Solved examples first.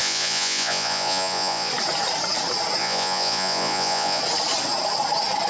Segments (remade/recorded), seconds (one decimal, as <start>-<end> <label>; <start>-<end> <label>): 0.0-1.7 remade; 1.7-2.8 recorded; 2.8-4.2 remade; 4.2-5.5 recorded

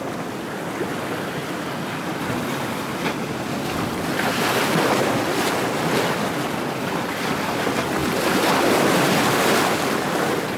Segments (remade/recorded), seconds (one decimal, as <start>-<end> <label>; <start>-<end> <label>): 0.0-8.0 recorded; 8.0-8.9 remade; 8.9-10.6 recorded

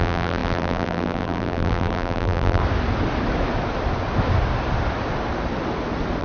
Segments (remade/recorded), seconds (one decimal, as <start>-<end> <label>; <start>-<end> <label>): 0.0-2.6 remade; 2.6-6.2 recorded

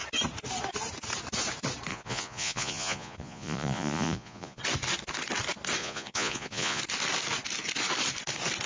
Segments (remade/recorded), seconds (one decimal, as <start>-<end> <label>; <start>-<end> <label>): 0.0-1.9 recorded; 1.9-4.6 remade; 4.6-5.8 recorded; 5.8-6.8 remade; 6.8-8.7 recorded

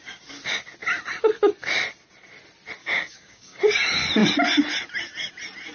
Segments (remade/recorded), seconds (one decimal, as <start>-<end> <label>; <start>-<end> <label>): 0.0-2.8 recorded; 2.8-3.6 remade; 3.6-5.7 recorded

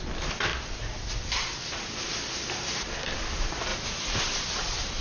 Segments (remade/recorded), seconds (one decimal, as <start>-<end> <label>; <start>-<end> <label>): 0.0-3.7 recorded; 3.7-4.2 remade; 4.2-5.0 recorded

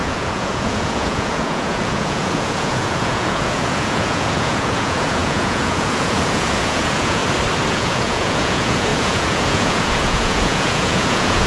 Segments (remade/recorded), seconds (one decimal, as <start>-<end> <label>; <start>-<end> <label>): 0.0-7.2 remade; 7.2-7.7 recorded; 7.7-11.5 remade

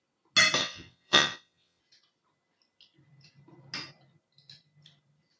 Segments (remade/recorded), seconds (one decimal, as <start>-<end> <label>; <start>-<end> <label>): 0.0-0.6 recorded; 0.6-1.8 remade; 1.8-5.4 recorded